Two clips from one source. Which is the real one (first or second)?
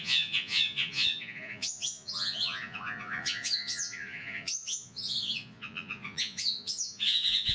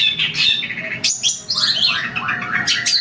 second